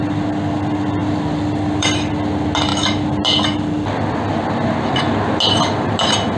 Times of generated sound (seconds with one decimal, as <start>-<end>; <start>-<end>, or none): 1.0-2.1